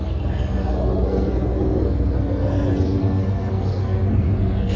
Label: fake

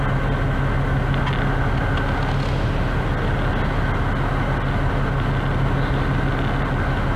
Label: real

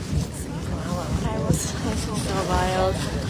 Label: real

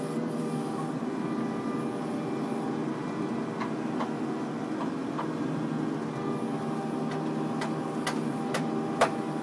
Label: real